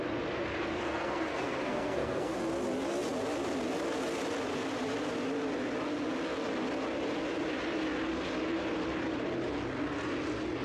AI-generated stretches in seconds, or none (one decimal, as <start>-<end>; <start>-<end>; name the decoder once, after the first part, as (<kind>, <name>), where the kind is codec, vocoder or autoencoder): 0.7-2.4 (codec, SNAC)